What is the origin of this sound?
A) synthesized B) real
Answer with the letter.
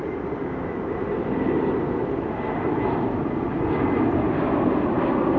B